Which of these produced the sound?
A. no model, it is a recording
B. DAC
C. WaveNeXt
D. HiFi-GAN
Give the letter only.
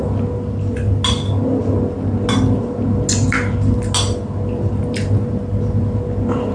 A